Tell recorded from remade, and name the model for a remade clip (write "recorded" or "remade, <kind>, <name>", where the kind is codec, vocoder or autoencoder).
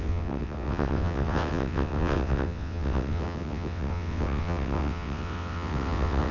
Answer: remade, vocoder, WaveNeXt